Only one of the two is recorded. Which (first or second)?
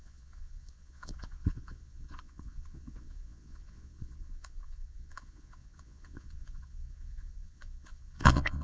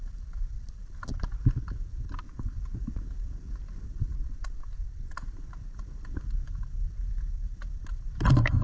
second